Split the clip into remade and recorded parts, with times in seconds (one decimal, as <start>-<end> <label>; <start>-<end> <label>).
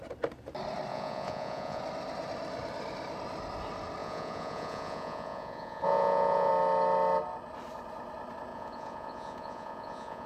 0.0-0.9 recorded; 0.9-1.8 remade; 1.8-4.0 recorded; 4.0-6.5 remade; 6.5-8.5 recorded; 8.5-10.3 remade